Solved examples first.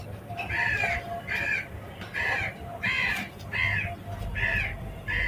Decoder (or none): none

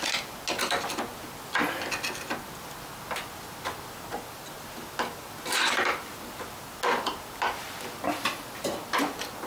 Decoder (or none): none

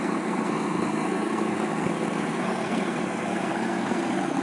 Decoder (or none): codec, SNAC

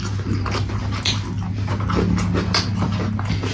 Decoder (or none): none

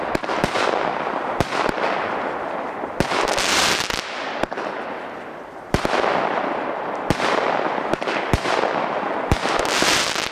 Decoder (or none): none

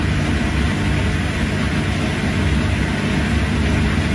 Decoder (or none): none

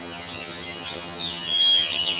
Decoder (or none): vocoder, HiFi-GAN